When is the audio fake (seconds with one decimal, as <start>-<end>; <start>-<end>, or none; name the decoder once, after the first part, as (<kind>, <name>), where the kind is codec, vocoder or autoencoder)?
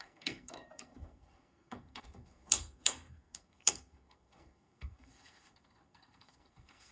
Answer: 0.0-6.9 (codec, SNAC)